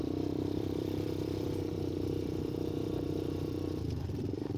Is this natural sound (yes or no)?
no